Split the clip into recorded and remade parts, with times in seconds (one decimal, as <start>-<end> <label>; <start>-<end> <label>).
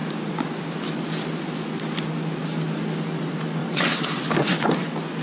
0.0-3.6 recorded; 3.6-4.2 remade; 4.2-5.2 recorded